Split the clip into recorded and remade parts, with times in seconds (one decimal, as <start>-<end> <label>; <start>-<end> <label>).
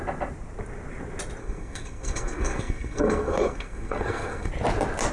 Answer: 0.0-1.4 recorded; 1.4-4.5 remade; 4.5-5.1 recorded